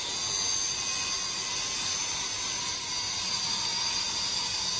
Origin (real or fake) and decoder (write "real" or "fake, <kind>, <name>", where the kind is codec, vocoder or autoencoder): real